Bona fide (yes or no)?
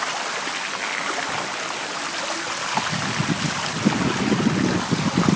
yes